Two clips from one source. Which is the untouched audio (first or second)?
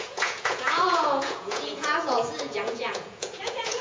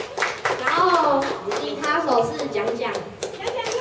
second